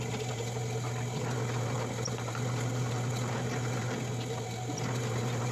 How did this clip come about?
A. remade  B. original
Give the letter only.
B